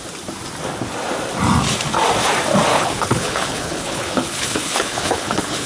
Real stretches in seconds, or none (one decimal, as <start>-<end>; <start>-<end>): 0.0-2.7

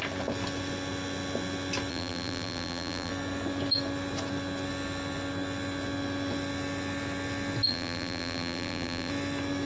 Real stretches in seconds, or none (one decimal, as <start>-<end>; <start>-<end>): 0.0-1.9; 3.1-7.7; 9.1-9.7

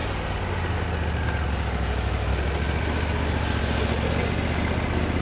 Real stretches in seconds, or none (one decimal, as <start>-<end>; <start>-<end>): 0.0-1.5; 2.3-5.2

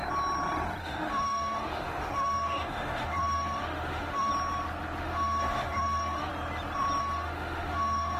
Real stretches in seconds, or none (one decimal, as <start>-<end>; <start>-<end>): 0.0-0.8; 4.3-5.0; 6.3-7.0

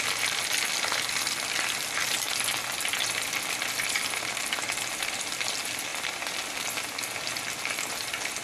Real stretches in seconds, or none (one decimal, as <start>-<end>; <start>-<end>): 0.0-8.4

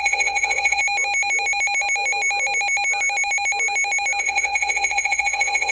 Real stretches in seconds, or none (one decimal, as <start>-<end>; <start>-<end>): 0.8-4.2